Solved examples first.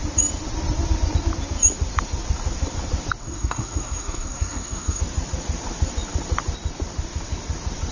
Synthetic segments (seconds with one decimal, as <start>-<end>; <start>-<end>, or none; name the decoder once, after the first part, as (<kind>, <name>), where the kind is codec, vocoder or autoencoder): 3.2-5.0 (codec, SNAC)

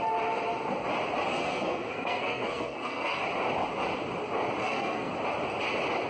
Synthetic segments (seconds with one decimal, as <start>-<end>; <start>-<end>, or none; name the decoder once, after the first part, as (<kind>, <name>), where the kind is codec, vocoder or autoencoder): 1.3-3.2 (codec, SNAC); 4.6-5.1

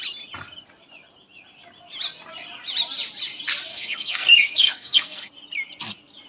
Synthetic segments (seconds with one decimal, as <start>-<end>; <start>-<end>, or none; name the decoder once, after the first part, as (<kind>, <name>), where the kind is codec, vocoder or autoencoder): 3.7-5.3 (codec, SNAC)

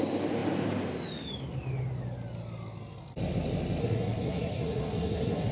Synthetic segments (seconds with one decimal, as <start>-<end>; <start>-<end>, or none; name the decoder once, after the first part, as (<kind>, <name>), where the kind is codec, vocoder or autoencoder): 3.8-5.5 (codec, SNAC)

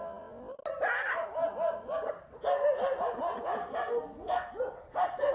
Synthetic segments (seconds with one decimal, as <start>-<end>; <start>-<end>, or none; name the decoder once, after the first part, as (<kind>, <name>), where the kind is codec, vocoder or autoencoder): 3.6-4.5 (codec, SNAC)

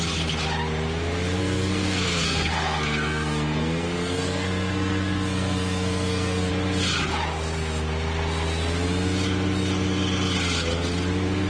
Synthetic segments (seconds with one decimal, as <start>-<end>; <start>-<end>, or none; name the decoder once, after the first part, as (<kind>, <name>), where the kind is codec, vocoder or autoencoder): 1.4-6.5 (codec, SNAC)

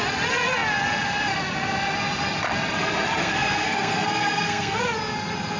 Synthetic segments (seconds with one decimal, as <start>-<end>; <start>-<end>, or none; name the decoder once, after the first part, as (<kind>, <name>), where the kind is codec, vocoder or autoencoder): 3.2-4.8 (codec, SNAC)